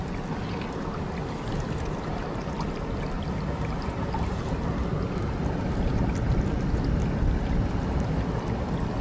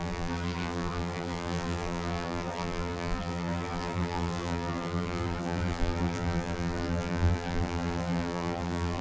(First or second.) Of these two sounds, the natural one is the first